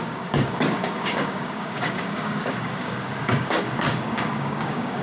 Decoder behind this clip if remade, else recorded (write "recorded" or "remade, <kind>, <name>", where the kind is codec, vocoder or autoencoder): remade, codec, DAC